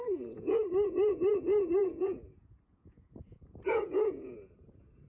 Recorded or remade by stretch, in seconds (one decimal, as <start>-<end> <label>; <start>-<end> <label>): 0.0-5.1 remade